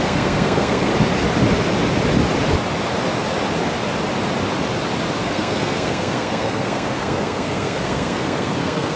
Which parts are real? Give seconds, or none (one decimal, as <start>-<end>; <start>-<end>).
0.9-5.2